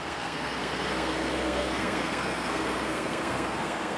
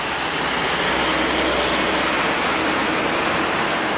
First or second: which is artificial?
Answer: first